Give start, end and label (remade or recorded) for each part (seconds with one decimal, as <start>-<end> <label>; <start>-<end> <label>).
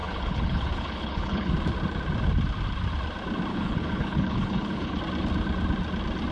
0.0-1.5 remade; 1.5-3.5 recorded; 3.5-5.0 remade; 5.0-6.3 recorded